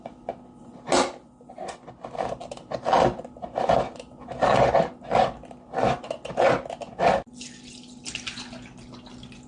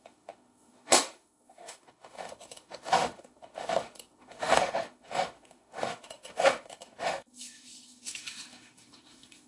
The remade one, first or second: second